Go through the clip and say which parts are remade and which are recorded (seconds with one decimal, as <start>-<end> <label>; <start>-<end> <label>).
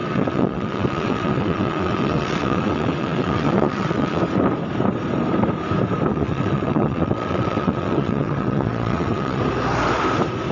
0.0-4.2 remade; 4.2-6.1 recorded; 6.1-9.4 remade; 9.4-10.5 recorded